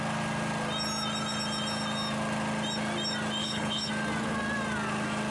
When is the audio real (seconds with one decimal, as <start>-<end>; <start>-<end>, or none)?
0.0-3.4; 3.9-5.3